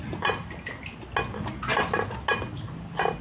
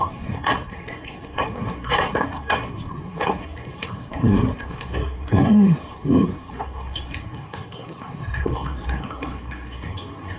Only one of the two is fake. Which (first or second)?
second